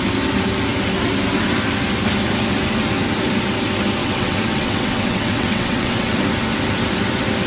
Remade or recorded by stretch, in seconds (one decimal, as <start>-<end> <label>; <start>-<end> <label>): 0.0-4.0 recorded; 4.0-6.2 remade; 6.2-7.5 recorded

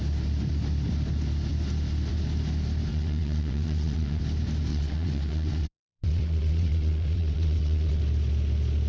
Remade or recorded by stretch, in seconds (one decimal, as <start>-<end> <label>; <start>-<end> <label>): 0.0-2.9 recorded; 2.9-4.2 remade; 4.2-4.7 recorded; 4.7-8.0 remade; 8.0-8.9 recorded

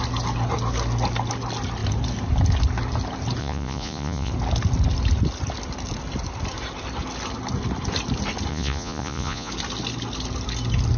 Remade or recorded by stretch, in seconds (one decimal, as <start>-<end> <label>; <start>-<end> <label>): 0.0-3.4 recorded; 3.4-4.3 remade; 4.3-8.5 recorded; 8.5-9.5 remade; 9.5-11.0 recorded